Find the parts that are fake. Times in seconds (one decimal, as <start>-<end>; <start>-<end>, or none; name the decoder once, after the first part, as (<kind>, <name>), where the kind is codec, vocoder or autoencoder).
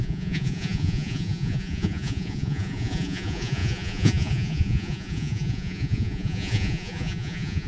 0.0-7.7 (vocoder, Vocos)